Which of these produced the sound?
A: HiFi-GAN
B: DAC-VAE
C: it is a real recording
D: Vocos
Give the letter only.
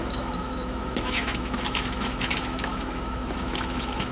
B